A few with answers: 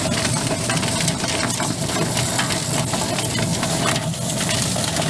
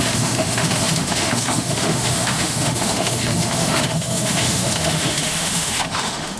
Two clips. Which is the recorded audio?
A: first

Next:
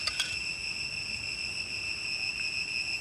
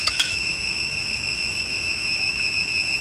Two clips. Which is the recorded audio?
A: first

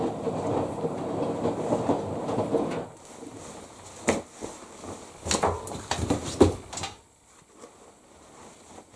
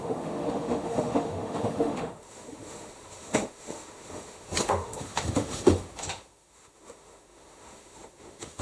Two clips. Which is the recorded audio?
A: first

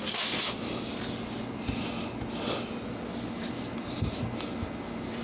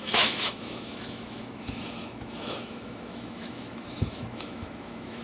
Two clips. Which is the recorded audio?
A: first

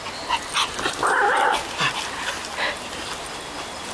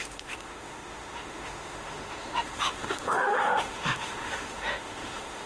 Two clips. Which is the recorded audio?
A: first